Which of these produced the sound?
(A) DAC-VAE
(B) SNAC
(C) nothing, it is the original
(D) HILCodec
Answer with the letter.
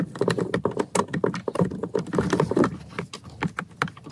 C